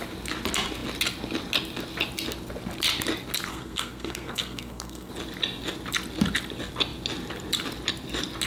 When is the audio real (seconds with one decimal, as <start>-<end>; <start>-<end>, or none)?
0.0-3.5; 5.1-8.5